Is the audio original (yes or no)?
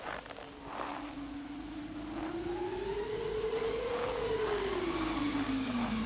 yes